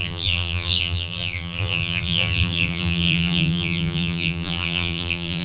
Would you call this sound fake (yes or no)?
yes